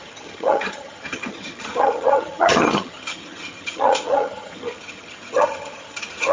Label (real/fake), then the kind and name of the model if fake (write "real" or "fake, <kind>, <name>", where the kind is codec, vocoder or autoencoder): fake, vocoder, HiFi-GAN